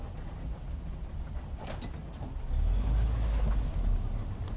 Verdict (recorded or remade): recorded